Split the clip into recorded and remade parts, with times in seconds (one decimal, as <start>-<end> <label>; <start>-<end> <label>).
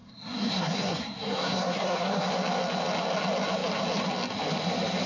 0.0-2.3 remade; 2.3-5.1 recorded